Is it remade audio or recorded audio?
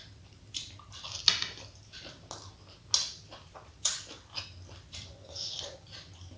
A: recorded